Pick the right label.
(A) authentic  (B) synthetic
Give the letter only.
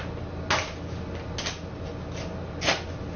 A